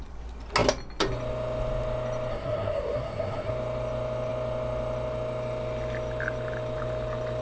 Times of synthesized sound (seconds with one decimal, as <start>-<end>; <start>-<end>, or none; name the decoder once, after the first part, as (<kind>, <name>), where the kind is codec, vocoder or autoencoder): 2.3-3.5 (codec, SNAC)